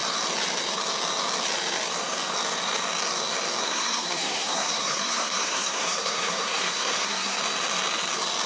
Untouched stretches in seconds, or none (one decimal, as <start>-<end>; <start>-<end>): 0.0-3.6; 7.4-8.5